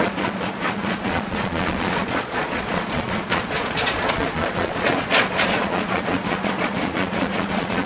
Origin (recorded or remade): remade